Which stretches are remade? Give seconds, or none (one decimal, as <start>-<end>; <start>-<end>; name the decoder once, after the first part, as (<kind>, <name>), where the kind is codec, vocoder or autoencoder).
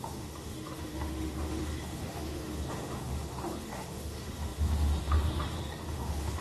0.0-6.4 (autoencoder, DAC-VAE)